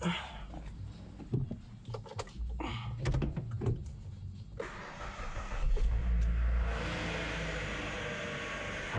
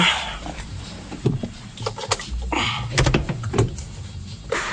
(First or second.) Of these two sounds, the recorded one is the first